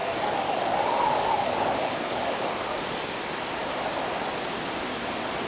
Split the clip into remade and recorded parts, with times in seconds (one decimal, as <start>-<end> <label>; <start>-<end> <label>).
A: 0.0-3.2 remade; 3.2-5.5 recorded